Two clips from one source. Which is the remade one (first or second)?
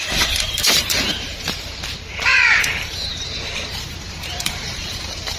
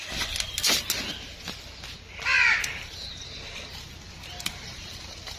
first